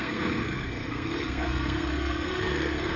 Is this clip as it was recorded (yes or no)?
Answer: no